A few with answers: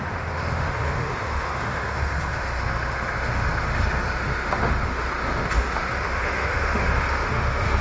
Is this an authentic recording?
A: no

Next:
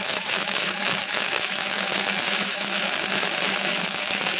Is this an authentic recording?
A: no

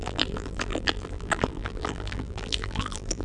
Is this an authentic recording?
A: no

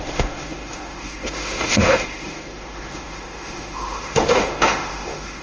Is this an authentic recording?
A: no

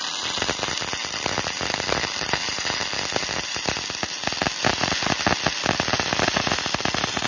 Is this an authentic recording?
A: no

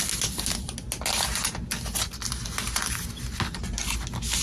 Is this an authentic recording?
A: yes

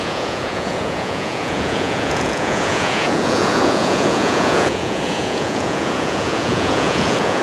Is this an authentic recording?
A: no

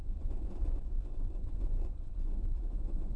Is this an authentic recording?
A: no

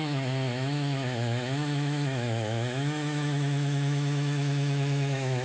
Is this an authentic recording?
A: no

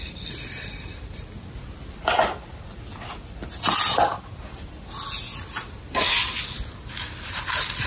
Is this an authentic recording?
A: yes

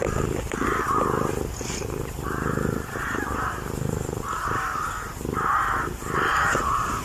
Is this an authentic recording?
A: yes